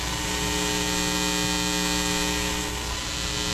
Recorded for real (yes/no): yes